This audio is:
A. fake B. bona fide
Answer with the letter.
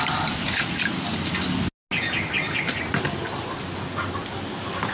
B